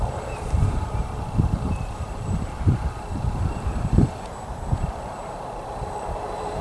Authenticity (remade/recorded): remade